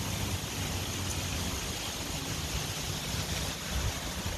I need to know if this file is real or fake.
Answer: real